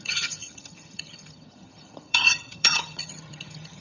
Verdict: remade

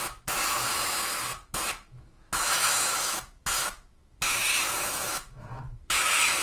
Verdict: remade